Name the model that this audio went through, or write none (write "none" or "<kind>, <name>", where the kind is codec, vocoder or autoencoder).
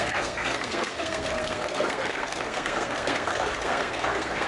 codec, SNAC